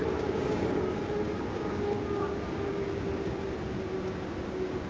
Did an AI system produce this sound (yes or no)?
yes